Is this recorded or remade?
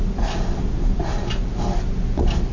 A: recorded